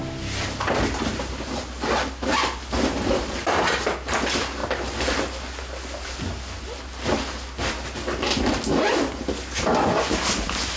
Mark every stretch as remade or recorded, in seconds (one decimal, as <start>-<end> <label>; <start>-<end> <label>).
0.0-10.8 recorded